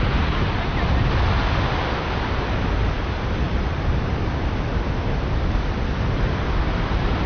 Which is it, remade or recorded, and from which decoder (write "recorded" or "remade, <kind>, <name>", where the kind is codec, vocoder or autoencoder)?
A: recorded